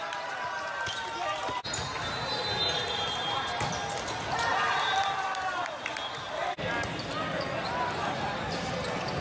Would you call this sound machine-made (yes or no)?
no